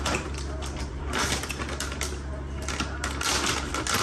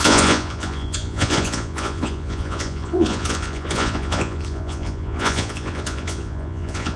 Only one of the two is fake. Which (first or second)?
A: second